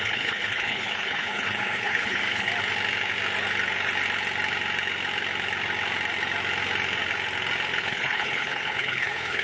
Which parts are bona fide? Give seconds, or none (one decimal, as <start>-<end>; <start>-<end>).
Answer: 2.5-7.8

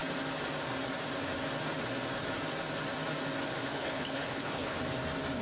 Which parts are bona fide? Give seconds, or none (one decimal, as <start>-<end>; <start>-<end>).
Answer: 0.0-3.6; 4.8-5.4